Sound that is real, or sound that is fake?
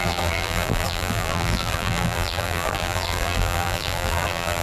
fake